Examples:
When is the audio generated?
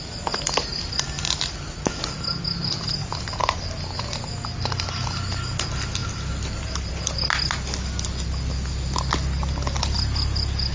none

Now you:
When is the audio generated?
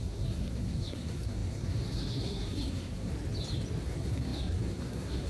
0.0-3.1 (codec, SNAC); 3.8-5.3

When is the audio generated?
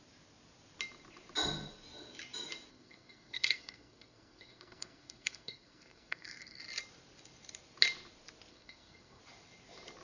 2.7-6.6 (codec, SNAC); 8.5-9.2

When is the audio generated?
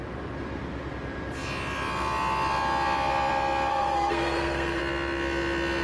3.7-4.8 (codec, SNAC)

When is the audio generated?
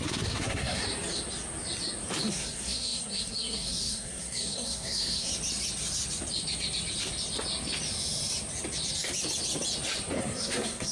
0.0-0.8 (codec, SNAC); 2.3-5.3; 10.2-10.9